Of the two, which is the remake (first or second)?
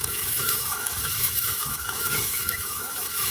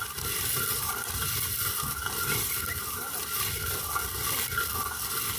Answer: first